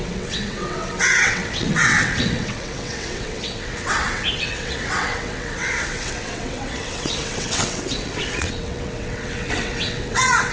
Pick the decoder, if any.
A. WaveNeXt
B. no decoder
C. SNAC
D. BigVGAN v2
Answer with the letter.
A